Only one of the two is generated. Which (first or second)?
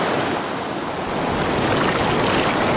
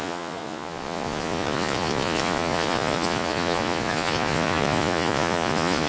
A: second